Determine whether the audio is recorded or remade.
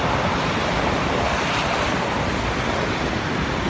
recorded